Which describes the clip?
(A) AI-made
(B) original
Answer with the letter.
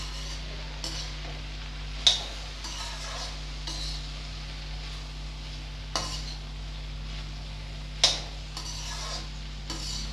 B